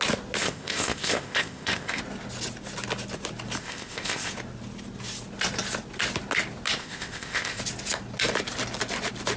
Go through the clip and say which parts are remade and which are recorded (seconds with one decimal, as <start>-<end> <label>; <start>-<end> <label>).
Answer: 0.0-0.4 recorded; 0.4-2.0 remade; 2.0-3.6 recorded; 3.6-4.3 remade; 4.3-6.8 recorded; 6.8-7.6 remade; 7.6-9.4 recorded